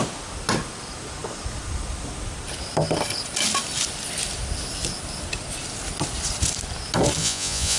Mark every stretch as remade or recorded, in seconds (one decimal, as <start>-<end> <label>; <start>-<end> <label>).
0.0-7.2 recorded; 7.2-7.8 remade

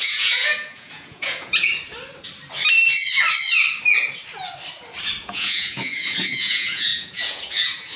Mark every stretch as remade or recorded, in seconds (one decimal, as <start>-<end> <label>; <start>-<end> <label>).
0.0-1.7 remade; 1.7-5.2 recorded; 5.2-8.0 remade

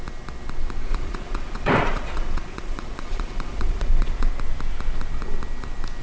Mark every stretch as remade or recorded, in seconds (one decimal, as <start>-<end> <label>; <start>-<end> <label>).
0.0-0.9 recorded; 0.9-4.3 remade; 4.3-6.0 recorded

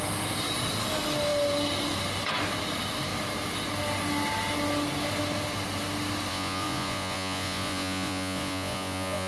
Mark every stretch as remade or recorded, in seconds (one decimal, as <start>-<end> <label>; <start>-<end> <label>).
0.0-6.3 recorded; 6.3-9.3 remade

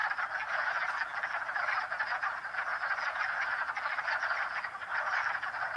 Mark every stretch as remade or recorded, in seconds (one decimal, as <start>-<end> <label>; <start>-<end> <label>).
0.0-5.8 recorded

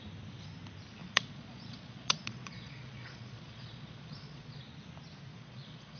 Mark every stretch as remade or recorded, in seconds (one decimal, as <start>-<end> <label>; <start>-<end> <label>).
0.0-1.0 recorded; 1.0-4.6 remade; 4.6-5.3 recorded; 5.3-6.0 remade

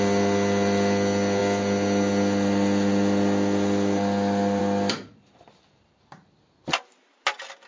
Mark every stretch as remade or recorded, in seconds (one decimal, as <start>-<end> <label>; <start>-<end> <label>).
0.0-7.7 recorded